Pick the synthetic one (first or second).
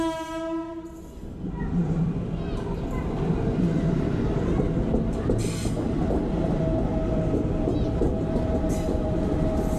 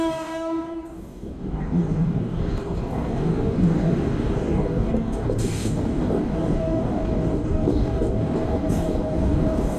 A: second